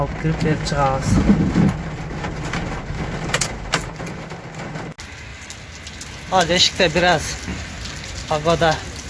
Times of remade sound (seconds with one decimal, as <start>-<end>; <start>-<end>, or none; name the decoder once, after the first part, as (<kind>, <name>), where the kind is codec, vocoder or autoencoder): 7.5-8.3 (vocoder, BigVGAN v2)